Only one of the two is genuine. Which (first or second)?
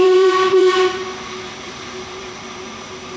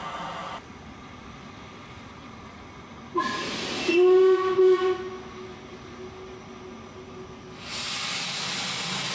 second